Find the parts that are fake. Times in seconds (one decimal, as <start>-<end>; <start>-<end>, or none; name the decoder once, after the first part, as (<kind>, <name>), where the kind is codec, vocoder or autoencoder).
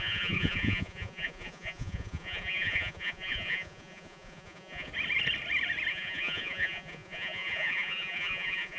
0.0-4.9 (vocoder, Vocos); 5.9-8.8